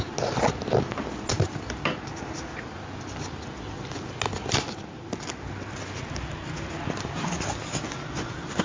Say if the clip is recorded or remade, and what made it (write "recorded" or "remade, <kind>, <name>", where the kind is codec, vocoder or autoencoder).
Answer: recorded